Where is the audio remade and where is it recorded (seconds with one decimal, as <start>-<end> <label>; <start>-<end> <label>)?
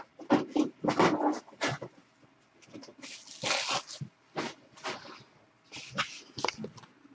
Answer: 0.0-7.1 recorded